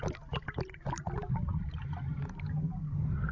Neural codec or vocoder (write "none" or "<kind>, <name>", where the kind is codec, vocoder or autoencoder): none